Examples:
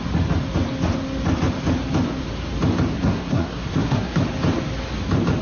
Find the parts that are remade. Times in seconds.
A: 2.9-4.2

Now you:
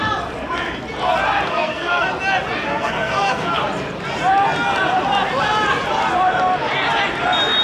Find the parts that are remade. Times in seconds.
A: 1.5-2.1; 2.7-3.5

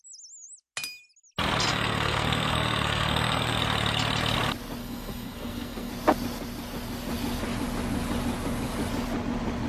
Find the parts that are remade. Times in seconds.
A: 1.7-3.6; 4.8-5.9

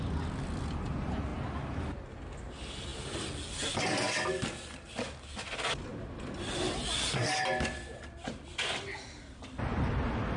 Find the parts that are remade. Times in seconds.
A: none

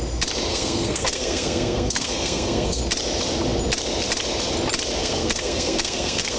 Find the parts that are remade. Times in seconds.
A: 0.5-2.8; 5.0-6.4